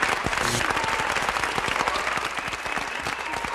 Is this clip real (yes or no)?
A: yes